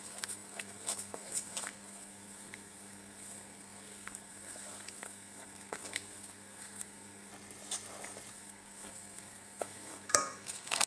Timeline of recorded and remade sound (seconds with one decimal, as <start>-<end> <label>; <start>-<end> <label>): 0.0-7.3 remade; 7.3-8.3 recorded; 8.3-10.9 remade